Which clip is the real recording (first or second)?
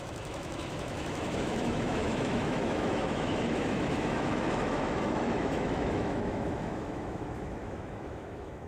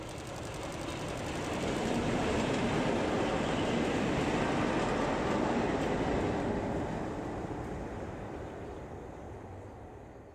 second